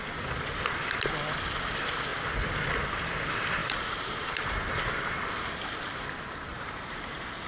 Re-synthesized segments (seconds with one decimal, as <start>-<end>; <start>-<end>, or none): 3.6-4.9; 6.5-7.5